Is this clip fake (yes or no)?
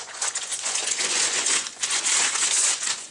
yes